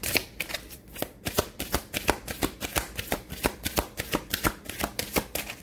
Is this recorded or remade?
remade